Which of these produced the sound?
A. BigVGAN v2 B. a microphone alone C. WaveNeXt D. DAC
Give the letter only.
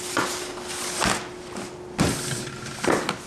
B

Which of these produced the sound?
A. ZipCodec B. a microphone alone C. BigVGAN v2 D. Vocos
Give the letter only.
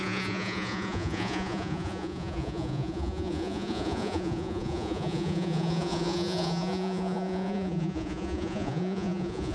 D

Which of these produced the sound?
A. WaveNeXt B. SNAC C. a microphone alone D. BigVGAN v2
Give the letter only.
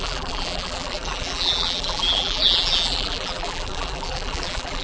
D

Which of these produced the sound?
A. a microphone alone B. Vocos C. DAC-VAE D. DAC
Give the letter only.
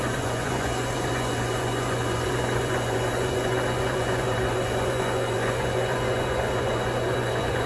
B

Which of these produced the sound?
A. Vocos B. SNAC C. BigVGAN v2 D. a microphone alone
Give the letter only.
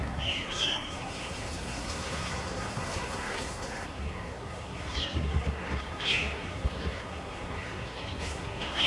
B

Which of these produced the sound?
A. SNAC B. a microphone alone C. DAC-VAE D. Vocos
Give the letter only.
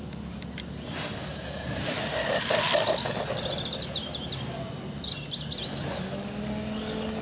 B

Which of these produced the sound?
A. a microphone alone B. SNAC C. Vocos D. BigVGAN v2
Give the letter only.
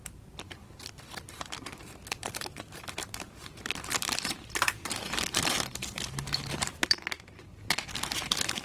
D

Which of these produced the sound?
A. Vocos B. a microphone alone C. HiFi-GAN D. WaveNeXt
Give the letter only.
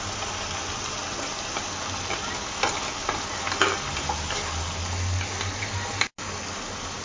B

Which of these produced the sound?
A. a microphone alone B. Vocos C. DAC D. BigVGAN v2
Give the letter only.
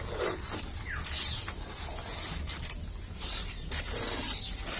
A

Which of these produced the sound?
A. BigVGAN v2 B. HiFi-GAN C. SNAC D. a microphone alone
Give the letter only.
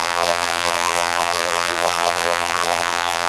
A